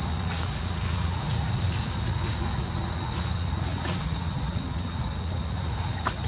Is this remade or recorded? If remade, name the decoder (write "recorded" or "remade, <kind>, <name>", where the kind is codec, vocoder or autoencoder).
remade, vocoder, Vocos